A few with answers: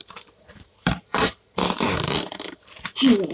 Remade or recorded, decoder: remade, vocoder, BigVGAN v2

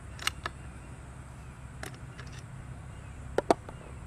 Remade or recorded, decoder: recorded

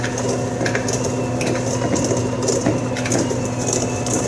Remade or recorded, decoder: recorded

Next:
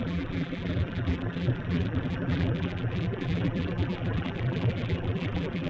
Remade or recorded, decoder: remade, vocoder, BigVGAN v2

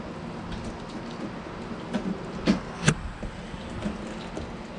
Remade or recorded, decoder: recorded